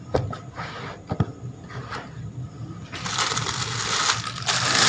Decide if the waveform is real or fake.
real